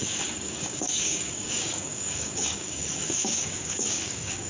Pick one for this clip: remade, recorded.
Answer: remade